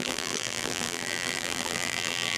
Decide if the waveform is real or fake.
fake